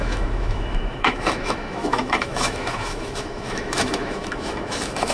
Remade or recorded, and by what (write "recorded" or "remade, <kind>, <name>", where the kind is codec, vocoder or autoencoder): remade, autoencoder, DAC-VAE